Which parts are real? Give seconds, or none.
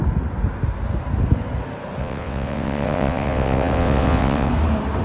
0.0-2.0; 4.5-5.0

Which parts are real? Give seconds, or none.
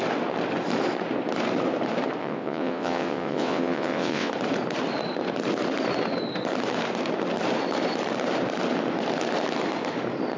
0.0-2.2; 4.3-10.4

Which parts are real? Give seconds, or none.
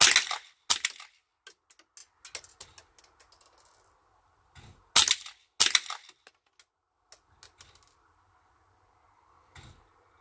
0.0-10.2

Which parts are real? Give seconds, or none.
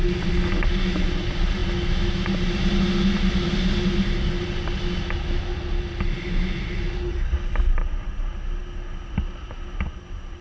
0.0-10.4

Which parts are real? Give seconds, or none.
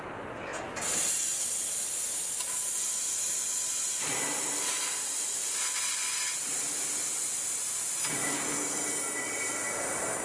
0.0-10.2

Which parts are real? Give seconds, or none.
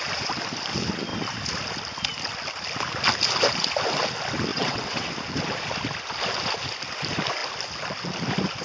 0.0-4.5; 5.1-8.6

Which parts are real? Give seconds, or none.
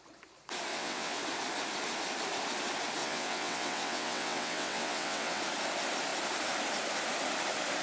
0.0-0.7; 1.2-3.0; 5.4-7.8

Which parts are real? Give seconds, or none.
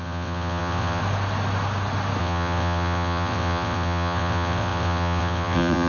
1.0-2.2